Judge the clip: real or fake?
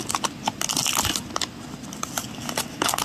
real